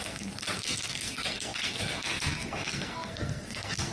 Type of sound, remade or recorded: remade